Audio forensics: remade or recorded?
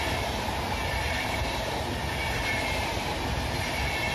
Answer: remade